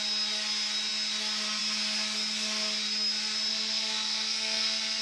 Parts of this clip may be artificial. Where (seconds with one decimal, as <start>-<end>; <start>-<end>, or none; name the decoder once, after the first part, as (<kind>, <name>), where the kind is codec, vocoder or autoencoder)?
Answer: 3.5-5.0 (codec, SNAC)